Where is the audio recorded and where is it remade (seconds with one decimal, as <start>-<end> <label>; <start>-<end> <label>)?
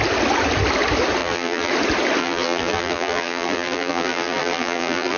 0.0-1.2 recorded; 1.2-1.7 remade; 1.7-2.2 recorded; 2.2-5.2 remade